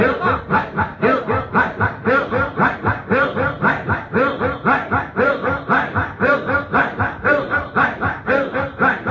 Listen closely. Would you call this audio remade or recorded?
recorded